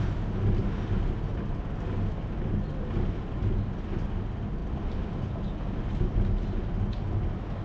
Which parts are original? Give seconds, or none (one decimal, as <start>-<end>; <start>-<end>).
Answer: 0.0-7.6